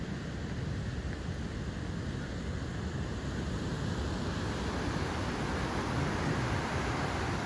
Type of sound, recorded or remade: recorded